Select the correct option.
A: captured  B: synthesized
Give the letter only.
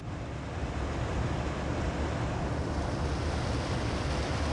A